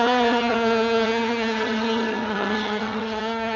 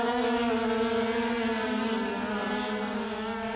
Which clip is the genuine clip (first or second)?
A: second